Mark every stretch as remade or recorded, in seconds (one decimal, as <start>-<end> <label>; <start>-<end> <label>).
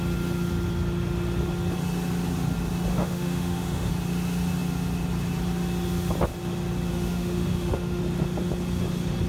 0.0-2.9 recorded; 2.9-3.9 remade; 3.9-6.9 recorded; 6.9-8.0 remade; 8.0-9.3 recorded